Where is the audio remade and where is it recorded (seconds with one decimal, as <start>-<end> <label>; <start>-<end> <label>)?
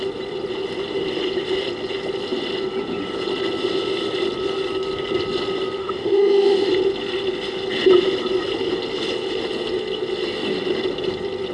0.0-5.8 recorded; 5.8-6.7 remade; 6.7-11.5 recorded